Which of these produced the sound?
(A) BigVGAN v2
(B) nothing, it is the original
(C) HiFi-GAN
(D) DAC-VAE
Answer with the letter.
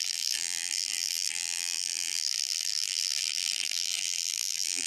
A